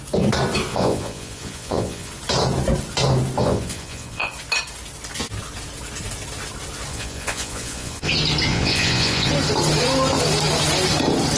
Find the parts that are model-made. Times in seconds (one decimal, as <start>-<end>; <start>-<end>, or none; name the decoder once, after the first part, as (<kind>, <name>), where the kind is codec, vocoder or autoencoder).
0.7-2.1 (vocoder, Vocos); 3.4-4.3; 6.9-8.1; 8.5-9.3